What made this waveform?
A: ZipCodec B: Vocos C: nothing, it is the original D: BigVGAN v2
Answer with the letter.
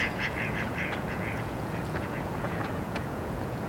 B